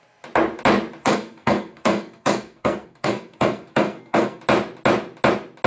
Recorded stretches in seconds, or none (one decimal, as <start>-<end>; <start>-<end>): 0.0-1.0; 4.4-5.7